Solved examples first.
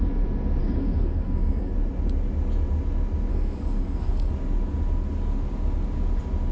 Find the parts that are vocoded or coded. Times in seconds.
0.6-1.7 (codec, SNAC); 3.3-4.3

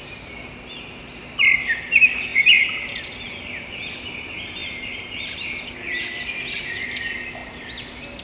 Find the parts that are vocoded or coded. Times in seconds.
2.3-3.7 (vocoder, BigVGAN v2); 4.6-6.4